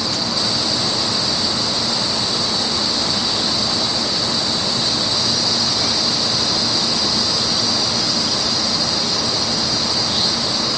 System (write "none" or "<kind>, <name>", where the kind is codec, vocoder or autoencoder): none